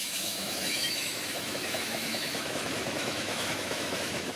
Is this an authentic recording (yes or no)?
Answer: no